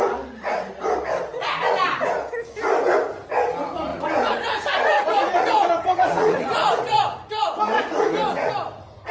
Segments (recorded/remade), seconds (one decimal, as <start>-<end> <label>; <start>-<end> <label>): 0.0-1.3 recorded; 1.3-2.1 remade; 2.1-3.9 recorded; 3.9-8.5 remade; 8.5-9.1 recorded